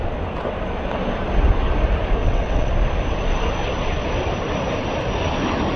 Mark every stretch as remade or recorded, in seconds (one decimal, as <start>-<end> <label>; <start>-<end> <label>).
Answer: 0.0-2.2 recorded; 2.2-2.7 remade; 2.7-5.8 recorded